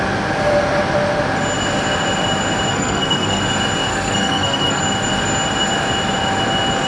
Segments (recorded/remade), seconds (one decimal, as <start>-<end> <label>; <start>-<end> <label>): 0.0-2.7 recorded; 2.7-3.4 remade; 3.4-3.9 recorded; 3.9-4.8 remade; 4.8-6.9 recorded